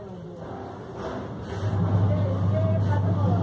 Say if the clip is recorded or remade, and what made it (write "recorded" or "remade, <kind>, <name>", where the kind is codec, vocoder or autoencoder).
recorded